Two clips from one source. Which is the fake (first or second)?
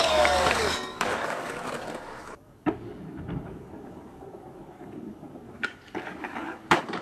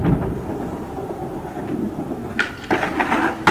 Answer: first